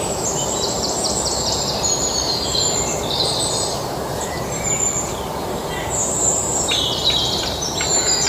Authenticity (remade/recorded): remade